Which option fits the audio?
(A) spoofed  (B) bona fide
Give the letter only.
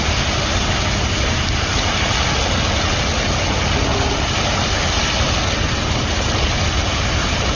B